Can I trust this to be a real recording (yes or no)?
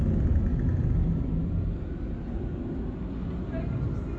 yes